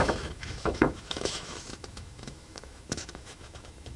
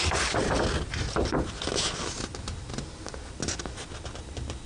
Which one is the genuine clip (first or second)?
second